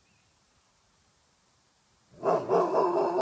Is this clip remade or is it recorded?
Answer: remade